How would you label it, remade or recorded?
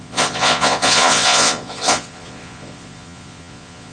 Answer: remade